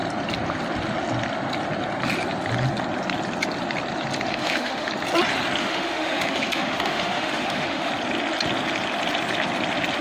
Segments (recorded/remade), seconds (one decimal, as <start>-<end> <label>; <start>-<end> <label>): 0.0-4.3 recorded; 4.3-4.9 remade; 4.9-5.6 recorded; 5.6-7.9 remade; 7.9-10.0 recorded